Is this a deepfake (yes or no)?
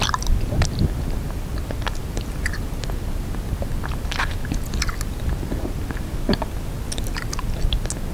no